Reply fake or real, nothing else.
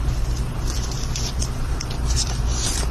fake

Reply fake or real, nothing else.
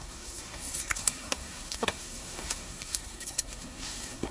fake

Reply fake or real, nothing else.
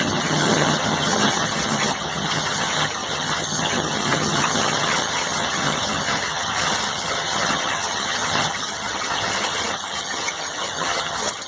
fake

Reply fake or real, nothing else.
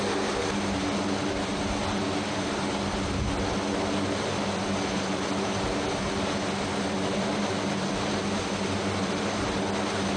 real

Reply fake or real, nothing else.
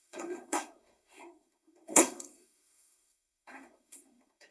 fake